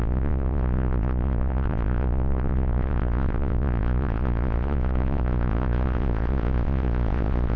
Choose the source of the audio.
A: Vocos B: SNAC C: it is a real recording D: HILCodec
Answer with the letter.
A